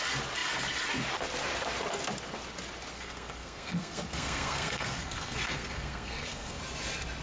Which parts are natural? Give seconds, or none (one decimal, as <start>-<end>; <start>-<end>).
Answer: 0.0-2.9; 6.6-7.2